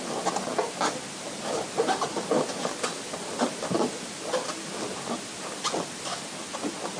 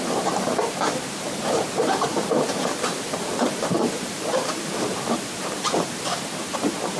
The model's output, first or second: second